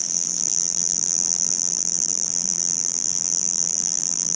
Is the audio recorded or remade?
remade